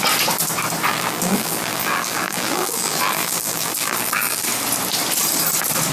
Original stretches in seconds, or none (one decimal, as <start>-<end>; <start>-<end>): 0.0-0.9; 4.4-5.9